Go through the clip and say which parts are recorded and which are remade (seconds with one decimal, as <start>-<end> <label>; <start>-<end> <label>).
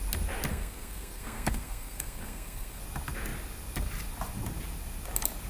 0.0-0.5 recorded; 0.5-2.8 remade; 2.8-5.5 recorded